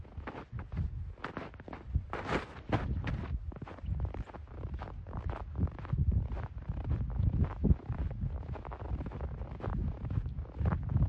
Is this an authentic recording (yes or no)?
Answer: yes